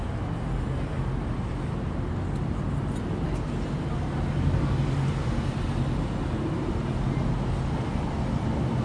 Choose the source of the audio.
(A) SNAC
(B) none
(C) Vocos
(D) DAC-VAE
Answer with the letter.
B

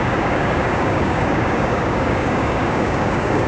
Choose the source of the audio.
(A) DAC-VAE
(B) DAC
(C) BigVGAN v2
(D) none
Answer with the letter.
B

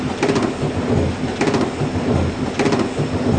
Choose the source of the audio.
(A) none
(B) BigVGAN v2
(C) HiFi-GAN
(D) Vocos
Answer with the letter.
A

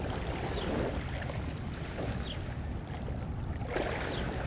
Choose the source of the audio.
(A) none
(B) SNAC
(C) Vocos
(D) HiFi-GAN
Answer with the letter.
A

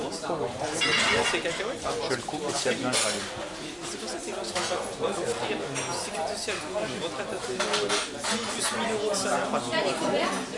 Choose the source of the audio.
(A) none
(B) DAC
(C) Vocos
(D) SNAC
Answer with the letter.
A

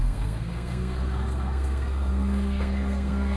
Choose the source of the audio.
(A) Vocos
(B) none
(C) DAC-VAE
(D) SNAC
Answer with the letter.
D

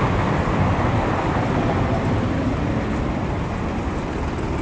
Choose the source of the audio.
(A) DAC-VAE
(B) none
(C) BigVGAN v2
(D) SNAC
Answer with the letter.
C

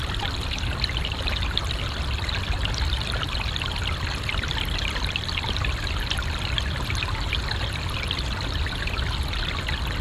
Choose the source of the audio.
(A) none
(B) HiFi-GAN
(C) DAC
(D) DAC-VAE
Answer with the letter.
A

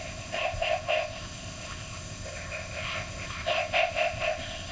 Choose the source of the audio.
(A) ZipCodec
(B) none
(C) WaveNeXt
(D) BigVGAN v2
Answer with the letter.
A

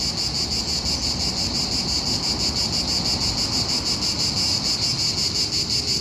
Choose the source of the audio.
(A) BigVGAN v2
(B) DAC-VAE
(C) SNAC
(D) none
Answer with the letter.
D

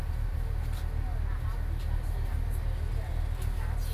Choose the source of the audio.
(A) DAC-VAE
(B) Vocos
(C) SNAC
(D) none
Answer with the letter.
D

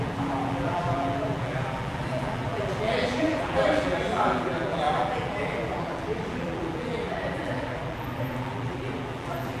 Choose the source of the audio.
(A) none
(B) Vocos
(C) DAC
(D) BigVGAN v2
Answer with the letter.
D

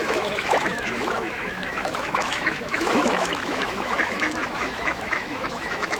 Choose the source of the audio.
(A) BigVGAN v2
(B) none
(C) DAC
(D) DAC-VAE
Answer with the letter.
D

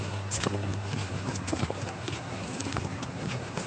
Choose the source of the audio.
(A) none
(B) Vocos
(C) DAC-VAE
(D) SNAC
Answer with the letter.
D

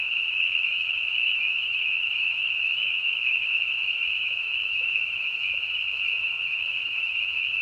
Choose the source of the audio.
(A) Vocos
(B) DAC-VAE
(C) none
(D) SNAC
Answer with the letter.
B